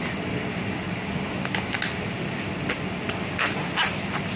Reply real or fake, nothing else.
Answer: real